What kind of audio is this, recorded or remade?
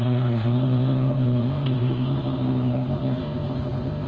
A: remade